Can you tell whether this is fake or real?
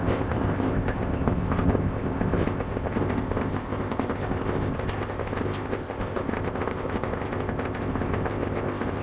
fake